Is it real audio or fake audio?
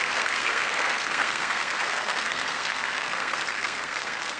fake